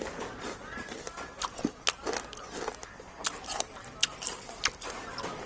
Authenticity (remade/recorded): recorded